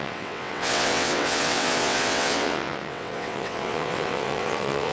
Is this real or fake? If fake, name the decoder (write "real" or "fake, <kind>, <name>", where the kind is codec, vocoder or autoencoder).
fake, vocoder, WaveNeXt